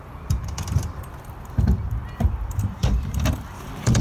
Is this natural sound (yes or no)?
no